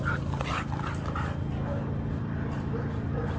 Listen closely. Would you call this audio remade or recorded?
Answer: recorded